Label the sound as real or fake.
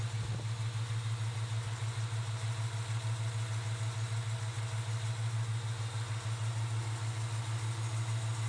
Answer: real